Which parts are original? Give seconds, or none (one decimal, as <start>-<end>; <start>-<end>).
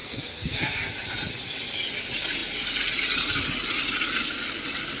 0.9-5.0